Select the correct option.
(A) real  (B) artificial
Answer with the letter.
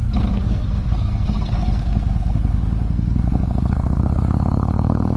B